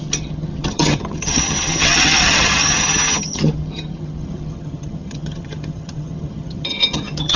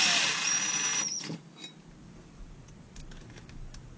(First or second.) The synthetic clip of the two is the first